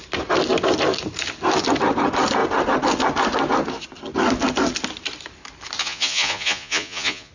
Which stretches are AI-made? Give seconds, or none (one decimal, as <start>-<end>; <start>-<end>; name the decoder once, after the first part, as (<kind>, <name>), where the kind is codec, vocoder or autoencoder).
5.8-7.3 (vocoder, Vocos)